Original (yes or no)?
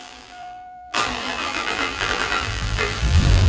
no